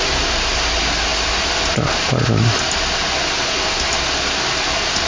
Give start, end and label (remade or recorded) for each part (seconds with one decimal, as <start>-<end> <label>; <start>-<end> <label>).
0.0-5.1 recorded